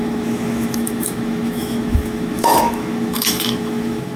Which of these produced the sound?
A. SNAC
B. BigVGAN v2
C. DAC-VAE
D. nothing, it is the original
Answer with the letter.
C